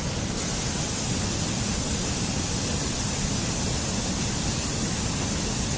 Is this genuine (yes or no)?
yes